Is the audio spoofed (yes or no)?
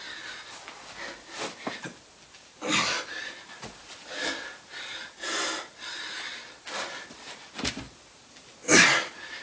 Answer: no